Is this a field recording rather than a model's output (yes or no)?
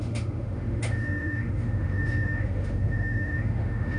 no